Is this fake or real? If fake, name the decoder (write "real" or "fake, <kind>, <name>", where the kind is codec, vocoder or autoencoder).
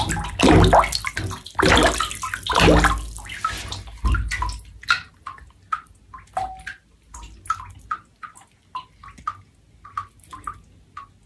real